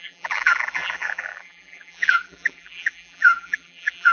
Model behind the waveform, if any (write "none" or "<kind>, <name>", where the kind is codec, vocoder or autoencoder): vocoder, BigVGAN v2